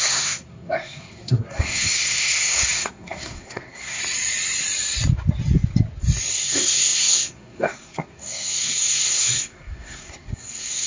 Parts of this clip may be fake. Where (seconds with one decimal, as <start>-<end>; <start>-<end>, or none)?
0.0-4.0; 6.3-10.9